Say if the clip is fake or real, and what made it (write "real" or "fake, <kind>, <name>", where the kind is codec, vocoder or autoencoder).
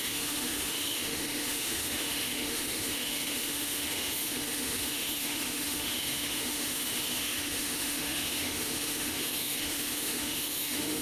fake, autoencoder, DAC-VAE